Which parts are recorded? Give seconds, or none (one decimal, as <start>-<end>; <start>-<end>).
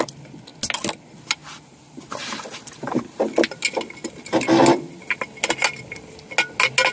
0.0-6.9